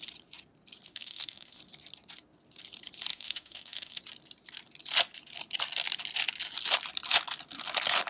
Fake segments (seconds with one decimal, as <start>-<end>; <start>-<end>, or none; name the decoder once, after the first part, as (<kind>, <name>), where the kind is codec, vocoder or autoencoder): 0.9-1.6 (autoencoder, DAC-VAE); 3.1-4.0